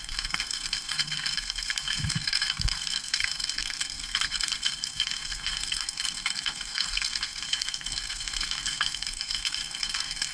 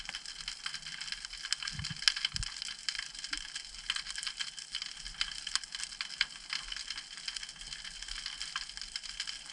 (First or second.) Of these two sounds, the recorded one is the second